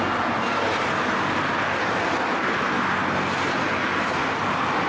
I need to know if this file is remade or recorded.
recorded